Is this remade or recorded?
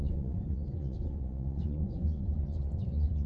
remade